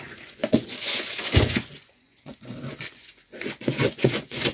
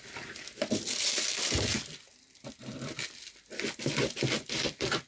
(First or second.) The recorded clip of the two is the second